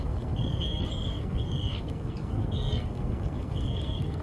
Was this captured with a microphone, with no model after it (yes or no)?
no